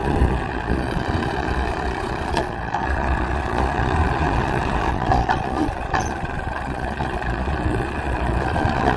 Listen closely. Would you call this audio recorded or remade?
remade